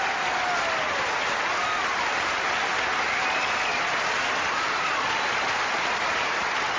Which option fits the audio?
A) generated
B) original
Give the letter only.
B